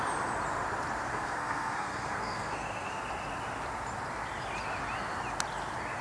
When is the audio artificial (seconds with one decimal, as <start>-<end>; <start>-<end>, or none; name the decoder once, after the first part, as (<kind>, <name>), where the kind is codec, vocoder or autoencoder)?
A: 1.1-2.9 (codec, SNAC)